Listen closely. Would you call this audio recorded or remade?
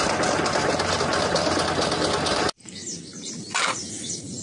recorded